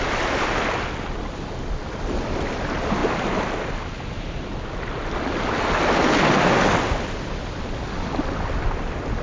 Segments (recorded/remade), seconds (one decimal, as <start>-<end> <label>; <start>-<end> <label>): 0.0-9.2 recorded